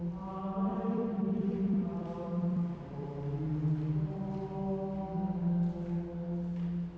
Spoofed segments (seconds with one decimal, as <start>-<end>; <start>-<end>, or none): 0.7-3.1